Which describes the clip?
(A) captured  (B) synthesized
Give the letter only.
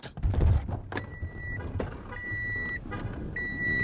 A